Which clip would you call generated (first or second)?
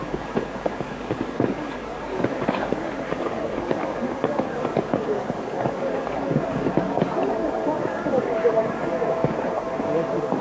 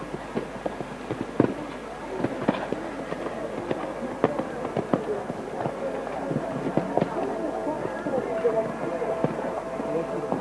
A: first